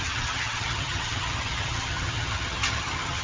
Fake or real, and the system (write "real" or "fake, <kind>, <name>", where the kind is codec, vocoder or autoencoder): fake, vocoder, HiFi-GAN